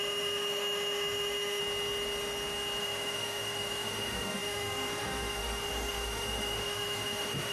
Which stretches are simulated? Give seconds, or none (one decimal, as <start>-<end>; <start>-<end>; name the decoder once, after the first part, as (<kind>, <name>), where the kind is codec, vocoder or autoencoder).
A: 0.0-1.6 (autoencoder, DAC-VAE); 2.8-7.5